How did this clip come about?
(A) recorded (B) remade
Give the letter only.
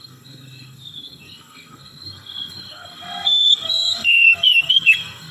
B